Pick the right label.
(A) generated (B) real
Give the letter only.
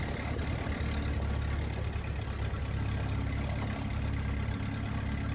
B